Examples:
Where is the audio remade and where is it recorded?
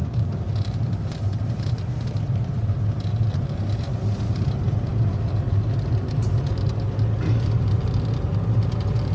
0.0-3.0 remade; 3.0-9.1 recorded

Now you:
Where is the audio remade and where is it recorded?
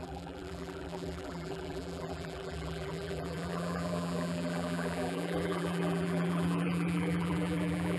0.0-8.0 remade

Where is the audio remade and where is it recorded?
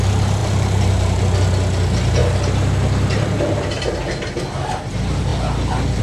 0.0-0.4 recorded; 0.4-1.2 remade; 1.2-2.2 recorded; 2.2-3.9 remade; 3.9-6.0 recorded